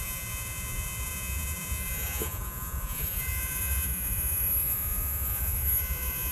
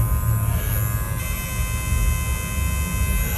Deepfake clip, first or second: first